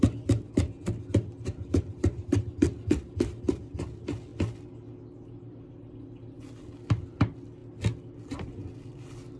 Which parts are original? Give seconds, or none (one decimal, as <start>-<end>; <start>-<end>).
0.0-9.4